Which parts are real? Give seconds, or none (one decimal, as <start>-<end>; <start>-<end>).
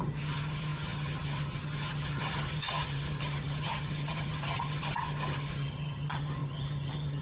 none